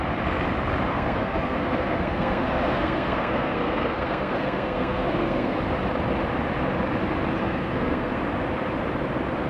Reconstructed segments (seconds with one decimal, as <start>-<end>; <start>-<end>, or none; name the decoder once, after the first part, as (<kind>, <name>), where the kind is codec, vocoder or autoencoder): 0.9-5.6 (codec, SNAC); 7.4-8.2